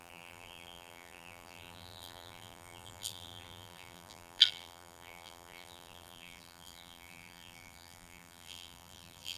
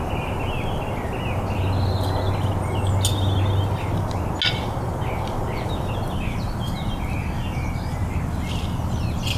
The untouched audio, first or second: second